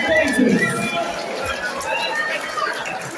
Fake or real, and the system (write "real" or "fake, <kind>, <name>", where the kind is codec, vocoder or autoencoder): real